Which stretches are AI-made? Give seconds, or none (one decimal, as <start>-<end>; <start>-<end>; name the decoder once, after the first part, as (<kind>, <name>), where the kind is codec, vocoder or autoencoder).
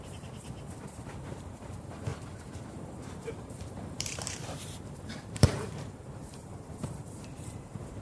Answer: 0.0-8.0 (vocoder, BigVGAN v2)